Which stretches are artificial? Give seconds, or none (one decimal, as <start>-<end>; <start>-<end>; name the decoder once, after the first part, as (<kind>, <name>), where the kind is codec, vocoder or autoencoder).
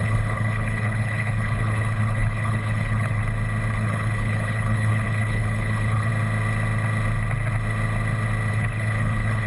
0.0-3.2 (codec, HILCodec); 3.7-6.1; 8.5-9.5